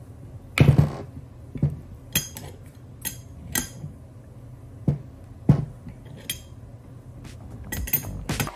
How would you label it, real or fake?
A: real